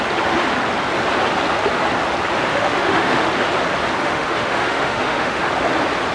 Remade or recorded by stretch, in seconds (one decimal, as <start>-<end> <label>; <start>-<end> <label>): 0.0-2.5 recorded; 2.5-3.3 remade; 3.3-4.0 recorded; 4.0-5.5 remade; 5.5-6.1 recorded